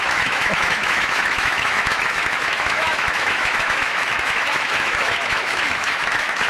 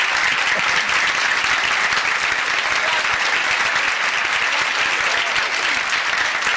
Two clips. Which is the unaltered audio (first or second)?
second